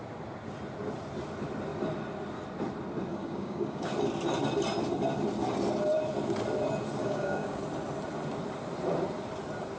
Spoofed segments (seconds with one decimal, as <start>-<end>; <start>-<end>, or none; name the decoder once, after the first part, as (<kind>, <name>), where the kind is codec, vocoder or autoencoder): 3.1-3.9 (codec, DAC); 7.0-7.6

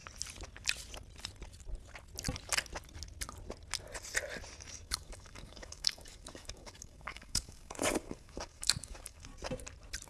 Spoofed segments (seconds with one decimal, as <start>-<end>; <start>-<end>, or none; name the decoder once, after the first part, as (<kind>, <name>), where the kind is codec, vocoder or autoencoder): 4.7-9.3 (codec, DAC)